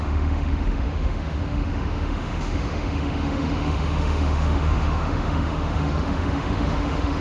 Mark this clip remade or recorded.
remade